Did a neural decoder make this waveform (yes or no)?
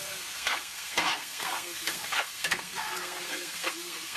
yes